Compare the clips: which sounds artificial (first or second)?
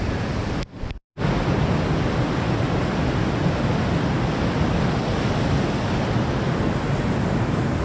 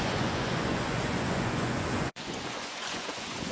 second